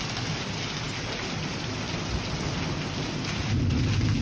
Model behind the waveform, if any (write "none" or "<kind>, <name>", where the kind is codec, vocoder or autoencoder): none